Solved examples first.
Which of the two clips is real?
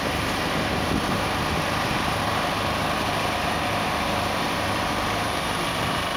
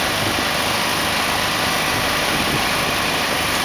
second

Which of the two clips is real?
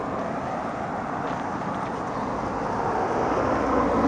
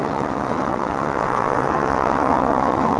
first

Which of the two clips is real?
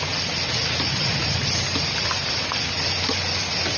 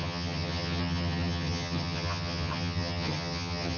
first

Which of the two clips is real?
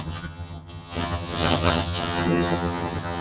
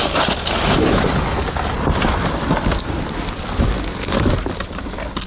second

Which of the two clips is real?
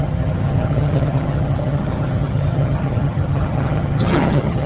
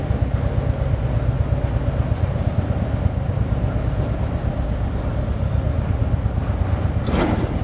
second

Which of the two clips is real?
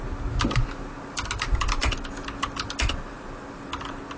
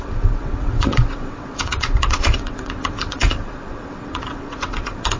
first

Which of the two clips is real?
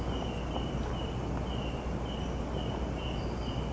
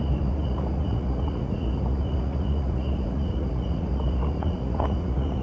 first